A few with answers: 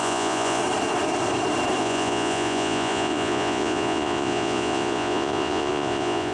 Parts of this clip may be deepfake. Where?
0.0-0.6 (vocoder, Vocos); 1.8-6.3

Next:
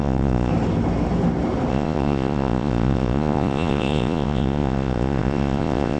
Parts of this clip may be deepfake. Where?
0.0-0.5 (vocoder, Vocos); 1.7-6.0

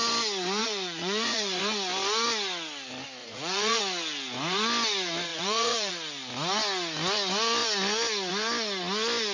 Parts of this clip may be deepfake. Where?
0.6-1.6 (vocoder, Vocos); 3.2-3.8; 5.3-5.9

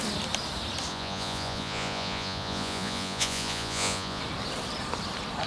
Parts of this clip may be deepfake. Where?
0.9-4.2 (vocoder, Vocos)